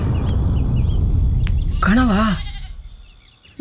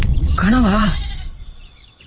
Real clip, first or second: first